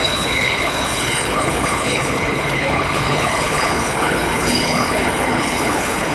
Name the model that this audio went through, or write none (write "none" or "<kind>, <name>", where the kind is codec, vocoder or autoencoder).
codec, HILCodec